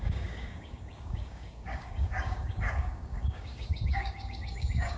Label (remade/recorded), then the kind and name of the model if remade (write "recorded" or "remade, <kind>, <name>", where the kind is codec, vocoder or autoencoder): remade, codec, DAC